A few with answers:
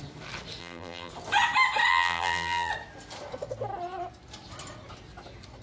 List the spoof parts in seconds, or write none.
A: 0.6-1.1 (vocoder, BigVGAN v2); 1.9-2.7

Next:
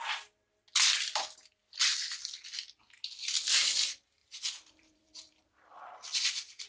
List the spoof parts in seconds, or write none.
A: 4.2-5.4 (vocoder, BigVGAN v2)

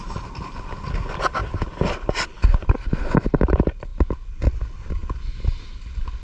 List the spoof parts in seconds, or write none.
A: 1.4-3.2 (vocoder, BigVGAN v2)

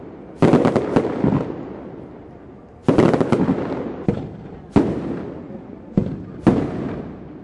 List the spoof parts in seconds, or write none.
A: none

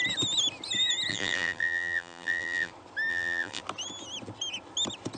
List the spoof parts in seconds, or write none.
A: 1.1-2.7 (vocoder, BigVGAN v2); 3.1-3.6

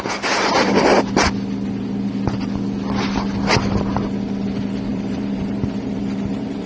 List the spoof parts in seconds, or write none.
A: 4.9-6.7 (vocoder, BigVGAN v2)

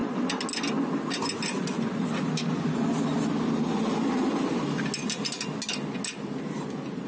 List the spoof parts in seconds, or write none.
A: none

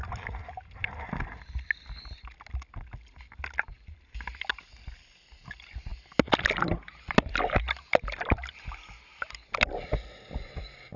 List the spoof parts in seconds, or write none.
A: 3.7-4.5 (vocoder, BigVGAN v2)